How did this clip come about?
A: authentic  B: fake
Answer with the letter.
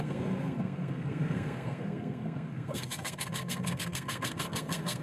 B